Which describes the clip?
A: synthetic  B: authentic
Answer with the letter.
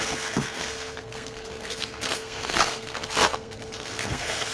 A